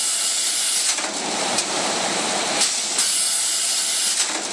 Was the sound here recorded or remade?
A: recorded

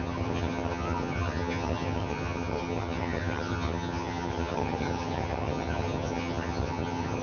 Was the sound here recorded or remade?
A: remade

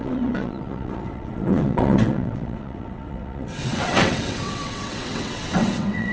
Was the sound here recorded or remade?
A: remade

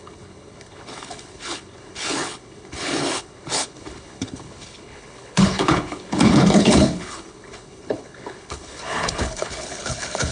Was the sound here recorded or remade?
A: remade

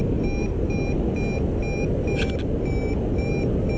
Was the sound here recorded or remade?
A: recorded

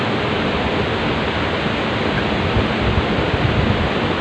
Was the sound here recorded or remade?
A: recorded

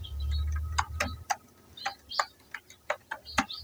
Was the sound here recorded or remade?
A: recorded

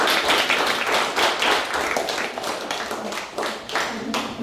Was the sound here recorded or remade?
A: recorded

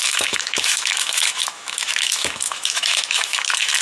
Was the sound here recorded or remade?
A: remade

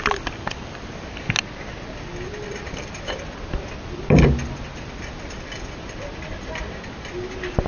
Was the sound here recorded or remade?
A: recorded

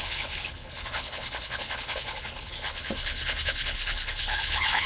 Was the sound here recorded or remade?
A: remade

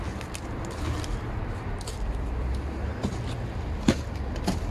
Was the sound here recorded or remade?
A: recorded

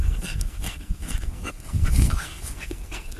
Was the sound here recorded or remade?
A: remade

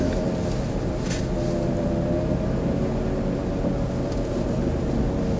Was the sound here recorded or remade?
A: recorded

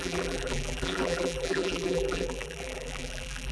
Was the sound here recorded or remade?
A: remade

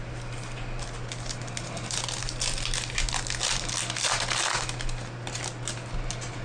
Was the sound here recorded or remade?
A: recorded